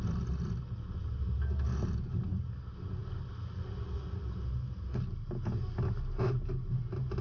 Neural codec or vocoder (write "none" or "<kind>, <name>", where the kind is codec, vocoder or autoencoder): none